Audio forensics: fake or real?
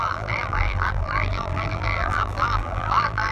fake